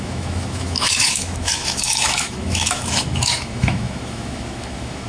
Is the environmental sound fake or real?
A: fake